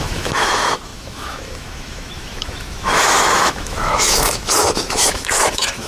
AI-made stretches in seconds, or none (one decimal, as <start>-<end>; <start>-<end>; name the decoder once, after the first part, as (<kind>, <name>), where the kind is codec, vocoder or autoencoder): 0.0-5.9 (autoencoder, DAC-VAE)